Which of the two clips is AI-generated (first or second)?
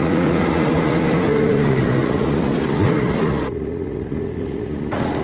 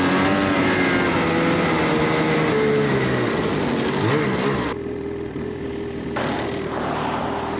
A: first